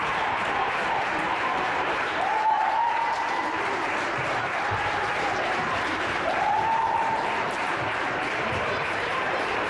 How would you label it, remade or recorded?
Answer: remade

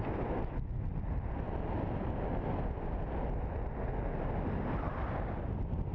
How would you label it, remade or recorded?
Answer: recorded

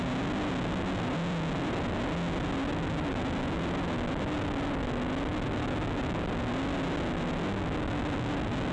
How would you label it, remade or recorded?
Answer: recorded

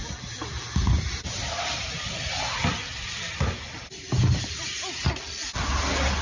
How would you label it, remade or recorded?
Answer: recorded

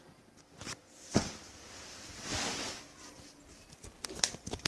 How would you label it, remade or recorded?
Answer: recorded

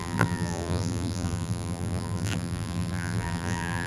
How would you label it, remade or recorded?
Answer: remade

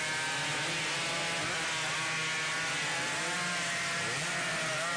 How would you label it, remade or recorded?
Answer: recorded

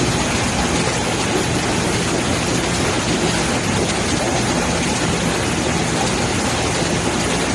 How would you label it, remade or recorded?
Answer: recorded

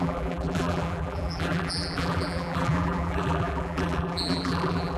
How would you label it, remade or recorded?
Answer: remade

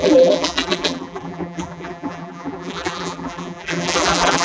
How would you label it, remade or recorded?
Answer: remade